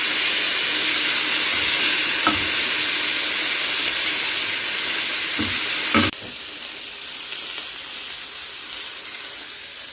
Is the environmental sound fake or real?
real